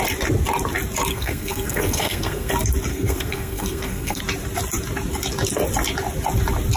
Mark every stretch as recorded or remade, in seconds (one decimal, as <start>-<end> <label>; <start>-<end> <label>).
0.0-1.1 recorded; 1.1-2.5 remade; 2.5-2.9 recorded; 2.9-4.2 remade; 4.2-6.8 recorded